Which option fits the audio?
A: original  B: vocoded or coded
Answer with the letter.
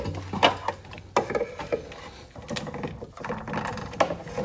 A